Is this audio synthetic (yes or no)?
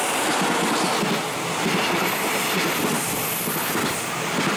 no